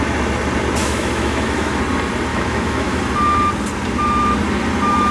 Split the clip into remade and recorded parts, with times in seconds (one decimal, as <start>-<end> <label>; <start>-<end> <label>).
0.0-0.8 recorded; 0.8-1.8 remade; 1.8-2.3 recorded; 2.3-3.0 remade; 3.0-5.1 recorded